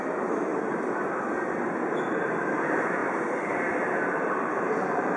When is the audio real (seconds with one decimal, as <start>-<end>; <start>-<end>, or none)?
0.5-2.2